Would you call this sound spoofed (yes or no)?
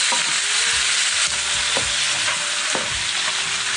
no